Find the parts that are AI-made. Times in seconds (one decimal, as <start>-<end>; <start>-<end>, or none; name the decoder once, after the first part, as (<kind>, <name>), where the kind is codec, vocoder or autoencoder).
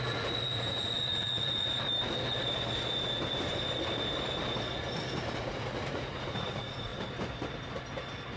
0.0-1.7 (vocoder, Vocos); 5.4-6.9